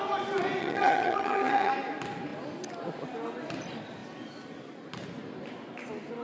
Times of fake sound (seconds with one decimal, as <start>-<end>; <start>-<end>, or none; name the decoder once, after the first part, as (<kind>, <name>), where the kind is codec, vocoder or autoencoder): 0.6-1.7 (vocoder, HiFi-GAN)